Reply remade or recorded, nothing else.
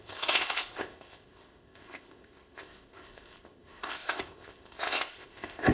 remade